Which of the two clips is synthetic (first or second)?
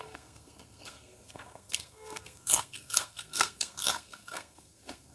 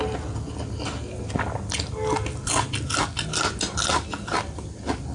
first